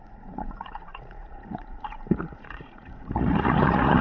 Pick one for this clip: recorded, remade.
remade